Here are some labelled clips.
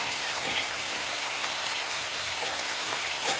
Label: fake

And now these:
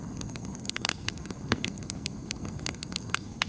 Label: fake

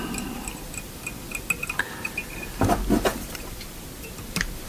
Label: real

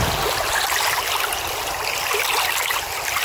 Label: real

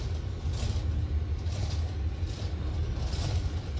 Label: real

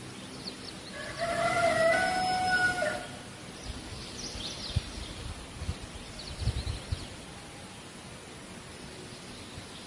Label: real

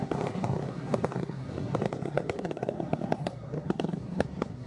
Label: fake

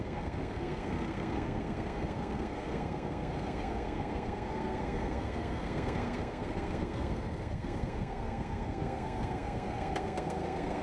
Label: fake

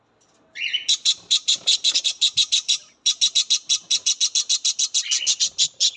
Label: real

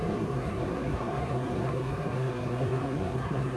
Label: fake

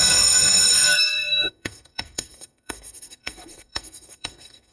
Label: fake